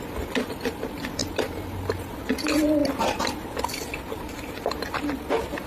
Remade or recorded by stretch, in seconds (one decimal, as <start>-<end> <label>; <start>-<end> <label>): 0.0-5.7 recorded